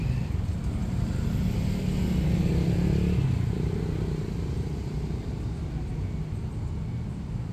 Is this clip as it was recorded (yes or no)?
yes